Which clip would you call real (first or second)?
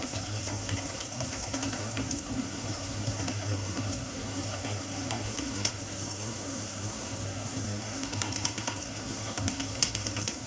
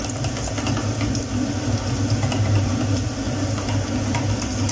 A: second